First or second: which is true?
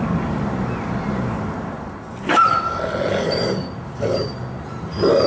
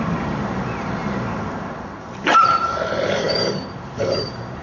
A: first